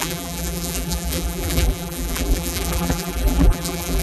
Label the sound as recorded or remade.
remade